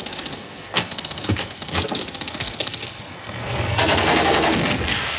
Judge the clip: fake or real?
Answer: fake